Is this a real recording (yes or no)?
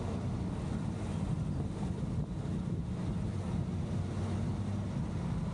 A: yes